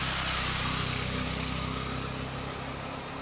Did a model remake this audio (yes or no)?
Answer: no